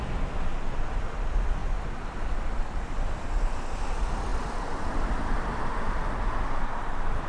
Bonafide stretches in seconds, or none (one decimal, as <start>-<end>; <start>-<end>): 0.0-7.3